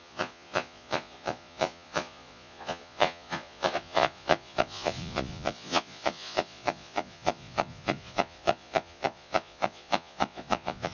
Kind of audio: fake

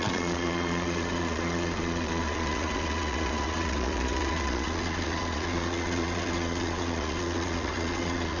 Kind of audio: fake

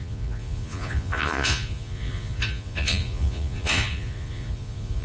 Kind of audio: fake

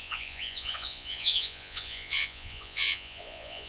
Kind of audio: fake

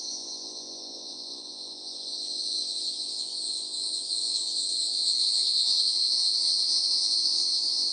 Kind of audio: fake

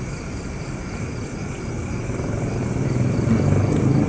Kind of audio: real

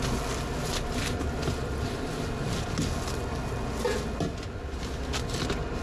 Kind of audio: real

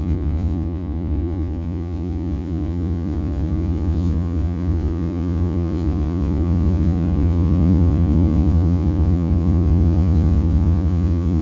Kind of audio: fake